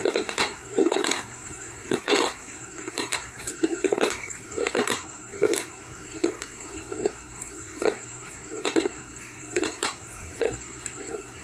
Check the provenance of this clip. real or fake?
fake